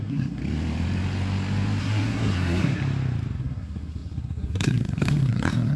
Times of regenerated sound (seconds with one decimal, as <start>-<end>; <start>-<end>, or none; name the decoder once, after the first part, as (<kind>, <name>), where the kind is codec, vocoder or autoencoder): 0.0-0.4 (codec, SNAC); 1.8-2.8; 3.4-5.8